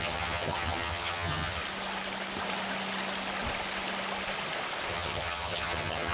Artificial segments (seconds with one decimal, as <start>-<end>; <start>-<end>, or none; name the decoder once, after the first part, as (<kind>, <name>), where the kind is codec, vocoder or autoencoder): 0.0-1.6 (vocoder, HiFi-GAN); 4.9-6.1